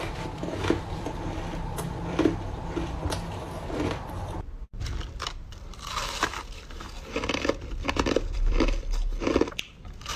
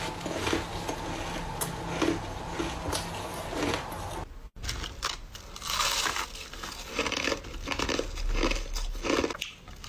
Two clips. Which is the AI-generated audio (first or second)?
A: first